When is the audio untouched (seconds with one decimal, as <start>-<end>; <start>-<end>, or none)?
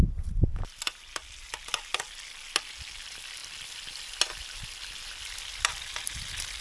0.0-6.6